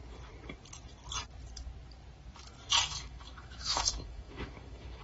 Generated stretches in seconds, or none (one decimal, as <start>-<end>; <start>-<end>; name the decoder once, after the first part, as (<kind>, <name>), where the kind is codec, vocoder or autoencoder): 2.9-5.0 (autoencoder, DAC-VAE)